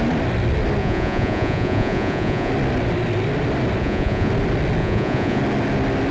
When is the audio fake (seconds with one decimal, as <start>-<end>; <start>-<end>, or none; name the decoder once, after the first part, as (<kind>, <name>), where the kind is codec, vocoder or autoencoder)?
0.8-2.5 (vocoder, Vocos); 3.8-4.3; 4.8-5.4